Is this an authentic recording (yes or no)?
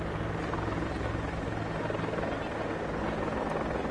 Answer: yes